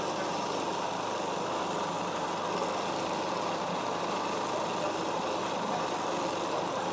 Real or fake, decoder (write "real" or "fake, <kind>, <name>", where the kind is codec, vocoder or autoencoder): real